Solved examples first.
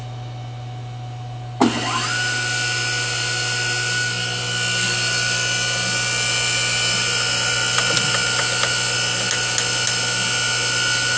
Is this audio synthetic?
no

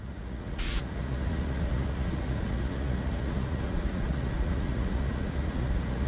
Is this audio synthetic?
yes